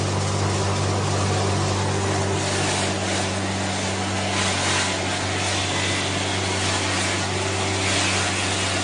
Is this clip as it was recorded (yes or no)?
yes